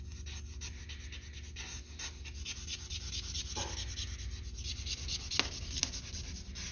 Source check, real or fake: real